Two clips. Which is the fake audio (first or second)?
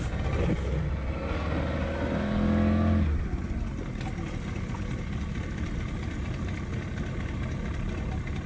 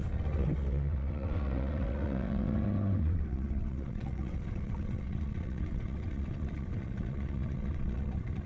second